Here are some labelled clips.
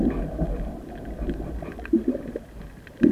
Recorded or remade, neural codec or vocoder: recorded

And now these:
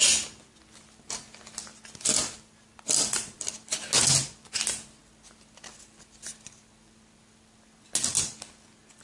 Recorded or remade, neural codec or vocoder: recorded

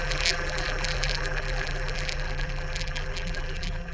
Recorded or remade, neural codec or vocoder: remade, vocoder, BigVGAN v2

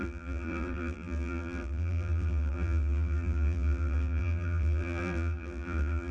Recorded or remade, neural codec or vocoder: remade, vocoder, BigVGAN v2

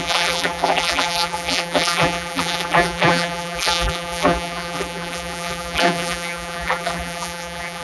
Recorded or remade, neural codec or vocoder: remade, vocoder, BigVGAN v2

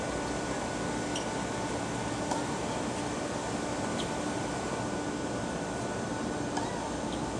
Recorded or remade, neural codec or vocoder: recorded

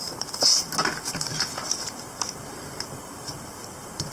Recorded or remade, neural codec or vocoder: remade, vocoder, BigVGAN v2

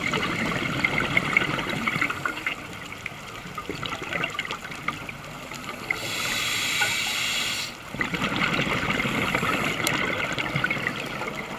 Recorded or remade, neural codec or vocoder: recorded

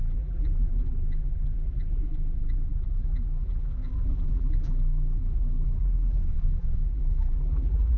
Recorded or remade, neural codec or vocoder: remade, vocoder, BigVGAN v2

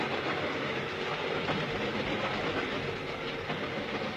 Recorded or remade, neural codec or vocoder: recorded